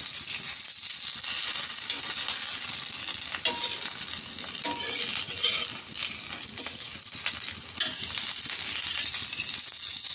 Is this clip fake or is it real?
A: real